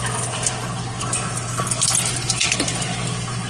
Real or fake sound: real